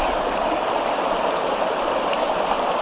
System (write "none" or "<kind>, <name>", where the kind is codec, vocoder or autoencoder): none